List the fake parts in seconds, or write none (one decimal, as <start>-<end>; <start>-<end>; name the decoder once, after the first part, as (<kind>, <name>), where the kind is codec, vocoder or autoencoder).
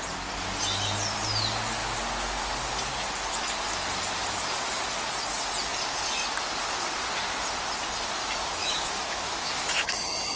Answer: 8.6-10.4 (autoencoder, DAC-VAE)